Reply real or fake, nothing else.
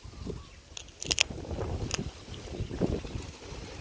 real